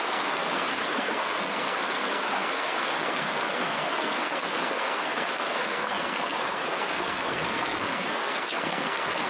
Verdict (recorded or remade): remade